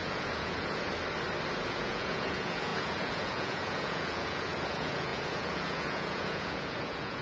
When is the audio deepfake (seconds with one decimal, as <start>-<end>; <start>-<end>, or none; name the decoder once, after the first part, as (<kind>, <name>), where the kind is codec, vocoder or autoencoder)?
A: 0.0-0.9 (vocoder, Vocos); 1.6-7.2